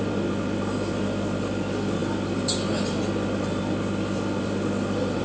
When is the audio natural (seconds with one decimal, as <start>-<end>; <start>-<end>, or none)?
0.0-5.2